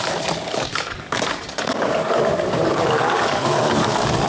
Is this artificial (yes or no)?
yes